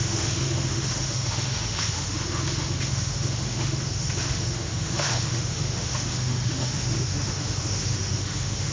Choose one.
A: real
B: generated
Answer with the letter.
B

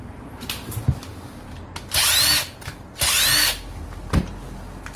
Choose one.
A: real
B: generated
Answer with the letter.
A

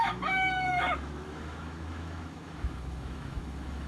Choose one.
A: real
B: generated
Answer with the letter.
B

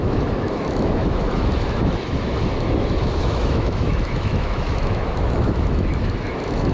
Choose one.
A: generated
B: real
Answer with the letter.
A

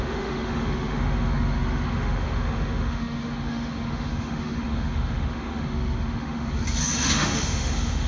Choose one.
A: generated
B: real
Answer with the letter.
A